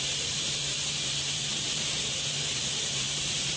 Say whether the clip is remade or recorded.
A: remade